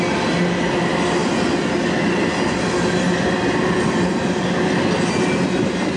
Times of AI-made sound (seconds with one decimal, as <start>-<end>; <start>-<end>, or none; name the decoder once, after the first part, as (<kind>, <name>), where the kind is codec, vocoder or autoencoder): none